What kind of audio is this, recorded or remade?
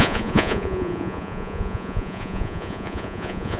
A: remade